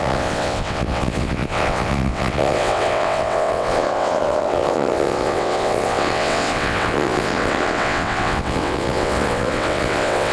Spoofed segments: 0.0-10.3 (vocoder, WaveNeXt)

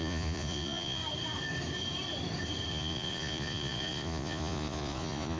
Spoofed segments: 0.0-1.0 (vocoder, Vocos); 2.7-5.4